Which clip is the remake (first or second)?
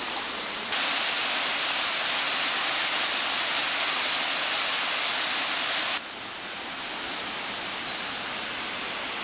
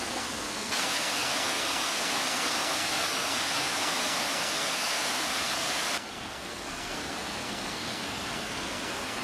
second